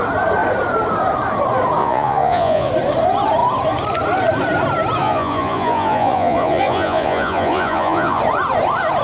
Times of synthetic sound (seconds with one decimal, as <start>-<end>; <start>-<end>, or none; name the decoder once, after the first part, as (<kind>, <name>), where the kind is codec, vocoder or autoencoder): 1.8-2.7 (vocoder, Vocos); 5.0-8.2